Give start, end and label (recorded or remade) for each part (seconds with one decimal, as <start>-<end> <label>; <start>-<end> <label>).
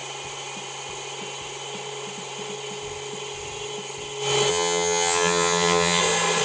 0.0-4.5 recorded; 4.5-6.0 remade; 6.0-6.4 recorded